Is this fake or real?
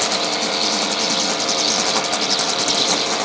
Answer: real